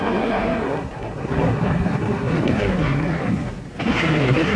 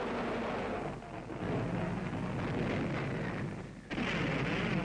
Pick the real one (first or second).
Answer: second